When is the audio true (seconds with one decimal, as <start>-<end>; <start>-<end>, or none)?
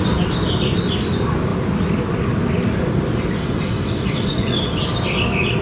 0.0-3.4; 4.8-5.6